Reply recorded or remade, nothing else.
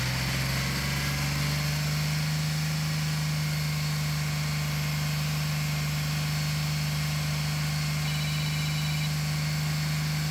recorded